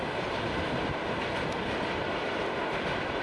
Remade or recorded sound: remade